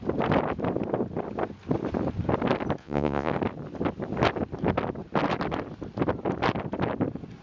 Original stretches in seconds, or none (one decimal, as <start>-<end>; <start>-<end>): 0.0-2.8; 3.3-7.4